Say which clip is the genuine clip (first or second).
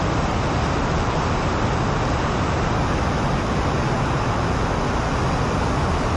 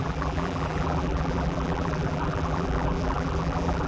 first